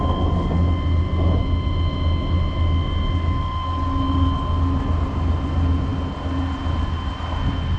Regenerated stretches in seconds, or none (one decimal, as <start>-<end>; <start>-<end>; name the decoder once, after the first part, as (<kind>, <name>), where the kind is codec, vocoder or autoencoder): none